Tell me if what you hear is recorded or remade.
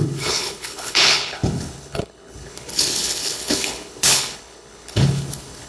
remade